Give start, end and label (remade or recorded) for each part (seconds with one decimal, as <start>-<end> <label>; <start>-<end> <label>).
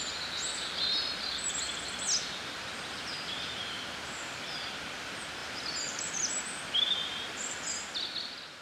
0.0-5.4 recorded; 5.4-6.3 remade; 6.3-8.6 recorded